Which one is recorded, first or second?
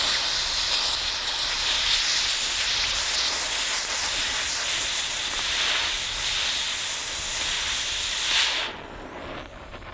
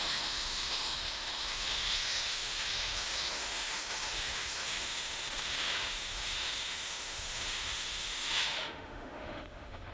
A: first